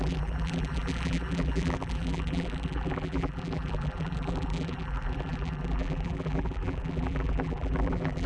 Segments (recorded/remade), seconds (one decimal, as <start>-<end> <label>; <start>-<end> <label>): 0.0-8.3 remade